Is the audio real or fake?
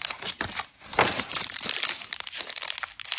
real